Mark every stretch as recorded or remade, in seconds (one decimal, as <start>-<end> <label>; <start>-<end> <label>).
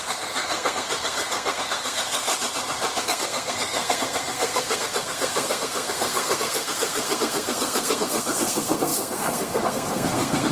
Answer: 0.0-2.3 remade; 2.3-3.0 recorded; 3.0-10.5 remade